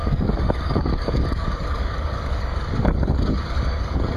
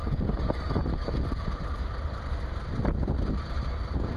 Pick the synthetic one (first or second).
first